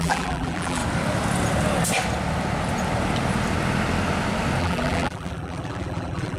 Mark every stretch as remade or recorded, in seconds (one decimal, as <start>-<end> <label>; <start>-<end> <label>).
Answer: 0.0-0.8 remade; 0.8-4.6 recorded; 4.6-6.4 remade